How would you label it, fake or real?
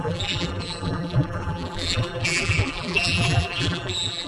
fake